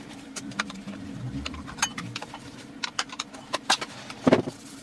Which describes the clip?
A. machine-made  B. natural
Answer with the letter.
A